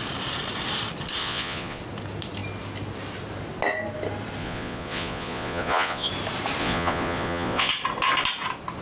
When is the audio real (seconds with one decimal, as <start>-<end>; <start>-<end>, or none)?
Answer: 0.0-1.2; 1.8-4.4; 6.1-6.6; 7.7-8.8